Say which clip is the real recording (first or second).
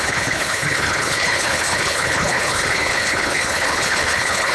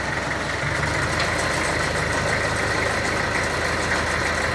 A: second